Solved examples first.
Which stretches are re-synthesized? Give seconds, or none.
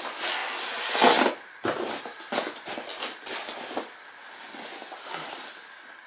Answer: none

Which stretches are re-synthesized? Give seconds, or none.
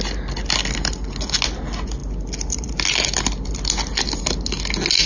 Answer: none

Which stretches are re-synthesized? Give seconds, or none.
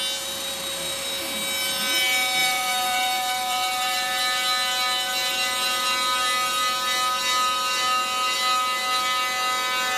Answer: 2.4-4.2 (vocoder, BigVGAN v2)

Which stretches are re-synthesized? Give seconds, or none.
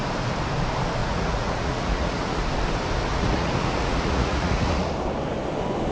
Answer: 1.0-2.4 (vocoder, Vocos); 3.1-4.9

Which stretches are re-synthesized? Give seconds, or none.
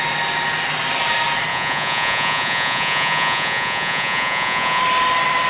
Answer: 1.5-4.8 (vocoder, Vocos)